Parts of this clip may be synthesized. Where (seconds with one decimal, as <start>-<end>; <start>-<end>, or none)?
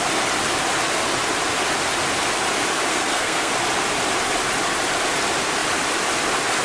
2.9-3.5